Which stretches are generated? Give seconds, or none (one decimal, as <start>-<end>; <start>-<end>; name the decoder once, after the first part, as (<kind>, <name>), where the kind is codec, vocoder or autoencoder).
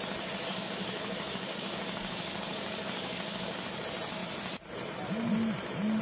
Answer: 0.5-3.8 (codec, DAC)